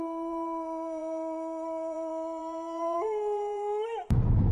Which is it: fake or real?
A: fake